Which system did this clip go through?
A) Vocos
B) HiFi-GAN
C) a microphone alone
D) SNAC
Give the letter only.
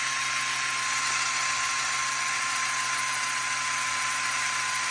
C